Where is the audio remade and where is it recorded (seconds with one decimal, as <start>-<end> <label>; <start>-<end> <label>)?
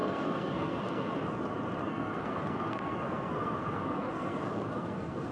0.0-1.1 remade; 1.1-1.8 recorded; 1.8-5.3 remade